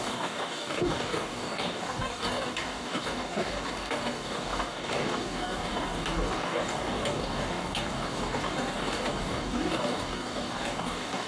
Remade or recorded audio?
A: remade